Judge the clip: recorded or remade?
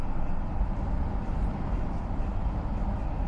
recorded